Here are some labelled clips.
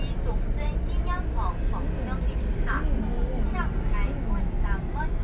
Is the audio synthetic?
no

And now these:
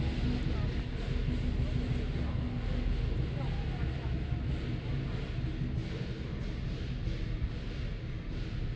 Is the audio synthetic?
no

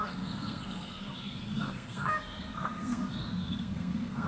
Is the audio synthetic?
yes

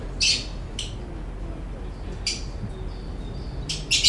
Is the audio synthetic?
no